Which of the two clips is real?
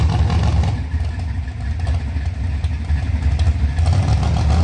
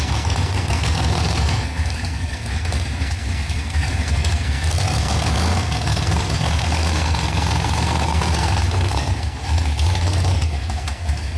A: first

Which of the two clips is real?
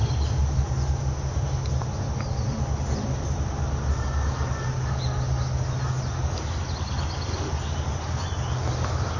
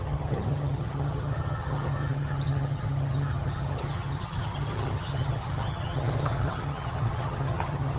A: first